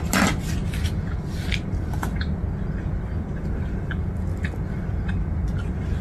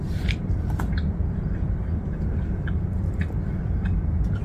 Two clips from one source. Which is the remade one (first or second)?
second